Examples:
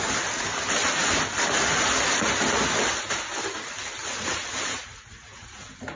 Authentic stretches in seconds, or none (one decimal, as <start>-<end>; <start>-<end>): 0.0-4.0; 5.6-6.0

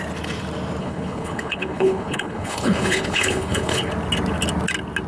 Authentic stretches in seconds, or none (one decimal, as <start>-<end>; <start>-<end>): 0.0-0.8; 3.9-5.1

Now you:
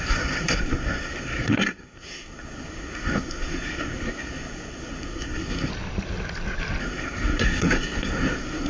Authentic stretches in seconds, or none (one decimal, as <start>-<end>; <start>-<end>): 5.7-6.8